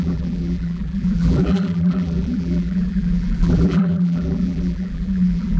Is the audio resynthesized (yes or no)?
yes